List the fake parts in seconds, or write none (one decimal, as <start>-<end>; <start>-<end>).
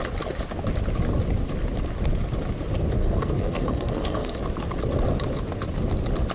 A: 3.0-4.4